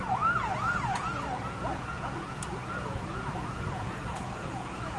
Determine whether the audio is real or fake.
fake